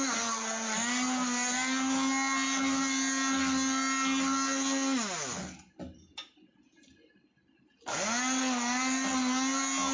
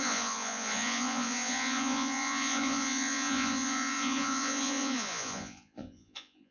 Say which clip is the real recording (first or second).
first